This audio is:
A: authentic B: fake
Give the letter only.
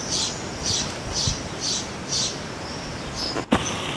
A